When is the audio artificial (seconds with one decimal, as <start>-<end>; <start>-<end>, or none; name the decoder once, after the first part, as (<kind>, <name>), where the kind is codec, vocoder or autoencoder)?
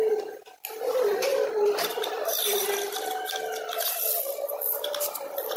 none